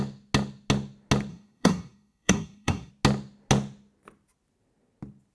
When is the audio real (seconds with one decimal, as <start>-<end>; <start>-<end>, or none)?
0.0-1.3; 2.9-5.3